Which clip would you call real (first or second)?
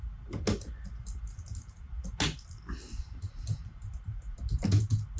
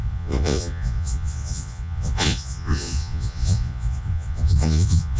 first